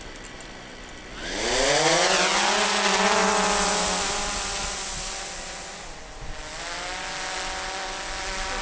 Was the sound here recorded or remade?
recorded